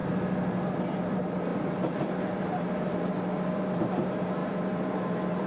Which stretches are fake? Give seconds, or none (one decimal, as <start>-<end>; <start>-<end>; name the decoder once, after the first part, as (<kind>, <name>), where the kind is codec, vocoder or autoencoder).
1.0-5.5 (vocoder, BigVGAN v2)